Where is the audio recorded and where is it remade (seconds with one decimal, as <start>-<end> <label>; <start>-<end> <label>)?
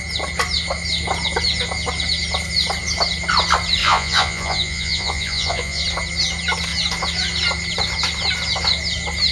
0.0-3.8 recorded; 3.8-5.8 remade; 5.8-9.3 recorded